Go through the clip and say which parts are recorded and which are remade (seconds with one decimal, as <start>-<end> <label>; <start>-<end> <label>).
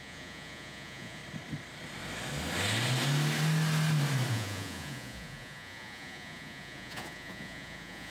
0.0-1.2 remade; 1.2-4.3 recorded; 4.3-8.1 remade